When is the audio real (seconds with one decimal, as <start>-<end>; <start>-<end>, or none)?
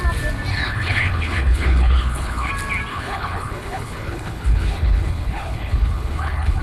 0.0-0.5; 2.5-2.9